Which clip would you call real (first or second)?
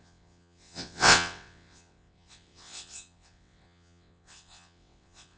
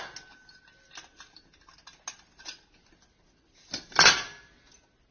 second